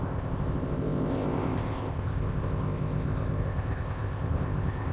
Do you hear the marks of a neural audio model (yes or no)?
yes